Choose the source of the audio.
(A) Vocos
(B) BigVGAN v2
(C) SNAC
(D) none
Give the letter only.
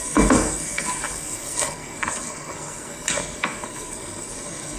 C